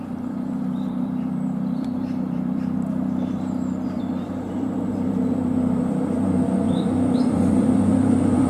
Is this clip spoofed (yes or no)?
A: yes